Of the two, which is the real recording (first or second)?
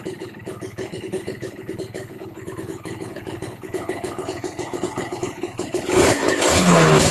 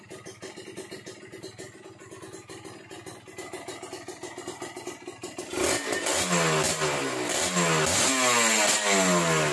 second